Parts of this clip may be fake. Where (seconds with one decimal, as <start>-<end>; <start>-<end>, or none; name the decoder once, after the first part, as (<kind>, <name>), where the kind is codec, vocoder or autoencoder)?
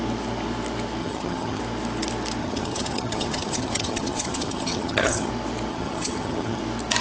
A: 1.0-1.6 (vocoder, HiFi-GAN); 2.4-5.3; 5.7-6.6